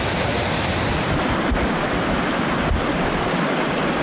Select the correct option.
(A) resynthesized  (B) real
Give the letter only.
B